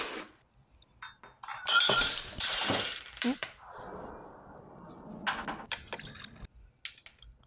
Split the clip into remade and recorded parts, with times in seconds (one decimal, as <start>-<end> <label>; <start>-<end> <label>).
0.0-1.5 recorded; 1.5-3.8 remade; 3.8-7.5 recorded